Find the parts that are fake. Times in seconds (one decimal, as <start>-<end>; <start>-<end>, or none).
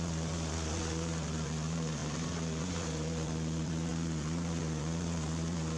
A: 0.0-5.8